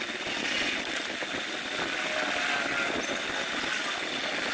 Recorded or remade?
recorded